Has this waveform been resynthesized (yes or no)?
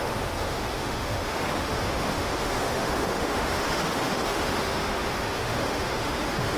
yes